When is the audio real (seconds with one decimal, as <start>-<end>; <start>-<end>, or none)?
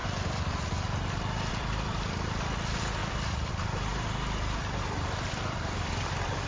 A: 0.0-1.5